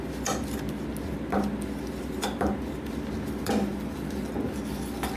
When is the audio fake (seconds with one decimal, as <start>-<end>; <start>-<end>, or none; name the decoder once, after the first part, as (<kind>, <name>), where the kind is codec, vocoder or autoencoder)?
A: none